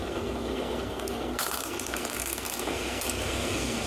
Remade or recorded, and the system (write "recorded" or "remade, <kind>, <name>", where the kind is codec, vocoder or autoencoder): remade, codec, SNAC